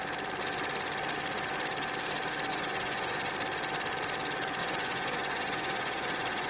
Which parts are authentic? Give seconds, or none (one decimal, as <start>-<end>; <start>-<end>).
0.0-2.5; 3.3-4.6